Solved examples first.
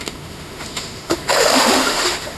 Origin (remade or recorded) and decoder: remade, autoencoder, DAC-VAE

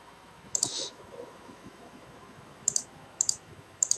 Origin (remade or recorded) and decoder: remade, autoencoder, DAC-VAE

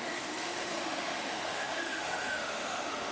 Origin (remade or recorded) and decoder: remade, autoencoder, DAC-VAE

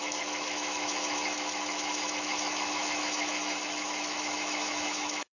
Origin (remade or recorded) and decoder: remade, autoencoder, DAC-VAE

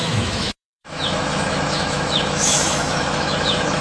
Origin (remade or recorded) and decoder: remade, autoencoder, DAC-VAE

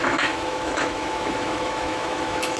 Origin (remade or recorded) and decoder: remade, autoencoder, DAC-VAE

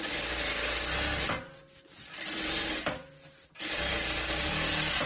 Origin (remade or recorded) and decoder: recorded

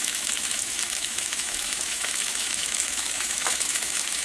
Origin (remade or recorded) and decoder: remade, autoencoder, DAC-VAE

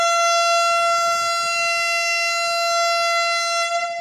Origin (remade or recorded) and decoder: recorded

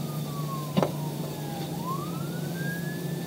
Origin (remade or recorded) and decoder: recorded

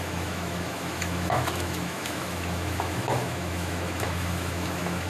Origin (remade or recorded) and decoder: remade, autoencoder, DAC-VAE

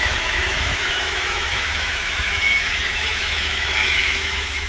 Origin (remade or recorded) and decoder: remade, autoencoder, DAC-VAE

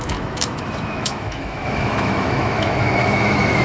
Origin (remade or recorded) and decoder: remade, autoencoder, DAC-VAE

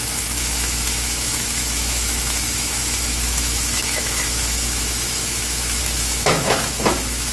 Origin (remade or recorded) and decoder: remade, autoencoder, DAC-VAE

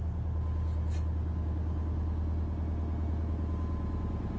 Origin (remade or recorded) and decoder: recorded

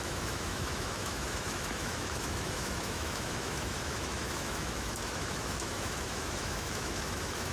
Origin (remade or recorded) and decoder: remade, autoencoder, DAC-VAE